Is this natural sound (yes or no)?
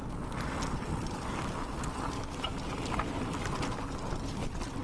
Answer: yes